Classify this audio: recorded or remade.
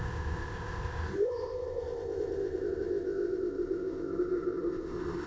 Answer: remade